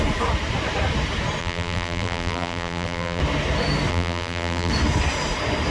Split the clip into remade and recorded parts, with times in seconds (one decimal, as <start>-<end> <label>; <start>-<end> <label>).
0.0-1.4 recorded; 1.4-3.2 remade; 3.2-3.9 recorded; 3.9-4.7 remade; 4.7-5.7 recorded